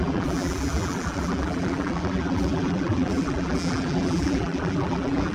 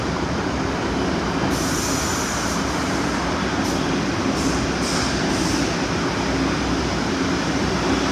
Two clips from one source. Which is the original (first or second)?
second